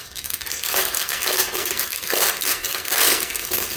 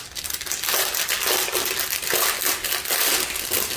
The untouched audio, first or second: second